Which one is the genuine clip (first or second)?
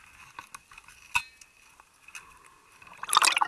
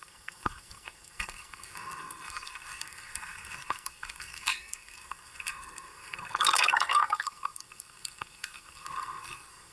first